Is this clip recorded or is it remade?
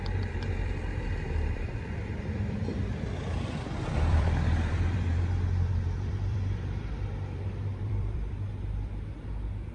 remade